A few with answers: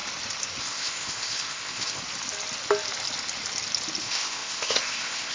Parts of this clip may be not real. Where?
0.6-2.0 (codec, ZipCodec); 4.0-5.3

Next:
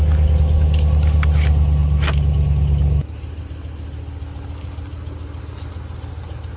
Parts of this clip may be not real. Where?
none

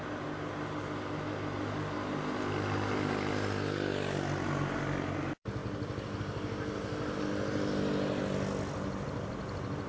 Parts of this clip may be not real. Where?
none

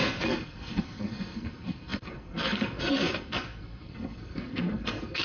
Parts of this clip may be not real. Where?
0.0-5.2 (codec, SNAC)

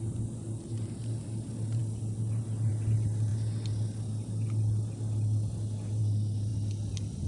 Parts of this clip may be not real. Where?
none

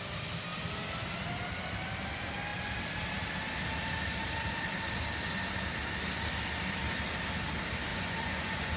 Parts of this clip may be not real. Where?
7.9-8.8 (vocoder, Vocos)